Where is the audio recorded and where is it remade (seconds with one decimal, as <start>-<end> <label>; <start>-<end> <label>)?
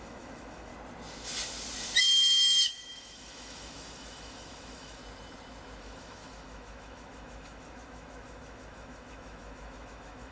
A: 0.0-0.7 remade; 0.7-2.0 recorded; 2.0-5.0 remade; 5.0-5.8 recorded; 5.8-10.3 remade